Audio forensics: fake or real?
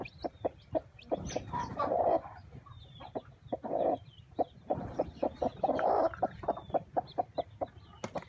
real